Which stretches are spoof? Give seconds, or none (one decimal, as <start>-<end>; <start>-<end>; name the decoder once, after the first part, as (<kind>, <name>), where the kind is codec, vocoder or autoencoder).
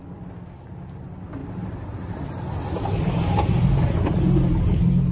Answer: 1.4-3.8 (vocoder, BigVGAN v2)